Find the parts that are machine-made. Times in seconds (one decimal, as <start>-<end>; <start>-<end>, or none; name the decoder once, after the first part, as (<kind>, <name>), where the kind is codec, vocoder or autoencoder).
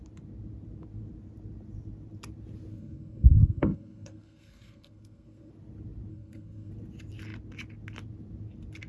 2.7-5.5 (codec, SNAC); 6.1-6.7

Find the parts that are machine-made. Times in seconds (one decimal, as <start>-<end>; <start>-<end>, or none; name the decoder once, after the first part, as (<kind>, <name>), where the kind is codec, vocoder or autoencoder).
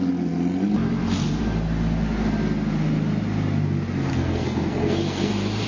4.1-5.3 (codec, SNAC)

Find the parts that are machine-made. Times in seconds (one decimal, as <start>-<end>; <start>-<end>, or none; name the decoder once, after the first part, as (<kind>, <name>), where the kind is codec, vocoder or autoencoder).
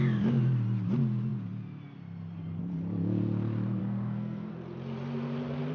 3.8-4.5 (codec, SNAC)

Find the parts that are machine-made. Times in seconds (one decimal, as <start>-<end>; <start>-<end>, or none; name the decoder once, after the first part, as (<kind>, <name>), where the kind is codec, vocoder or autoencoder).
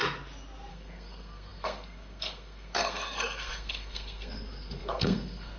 0.7-5.6 (codec, SNAC)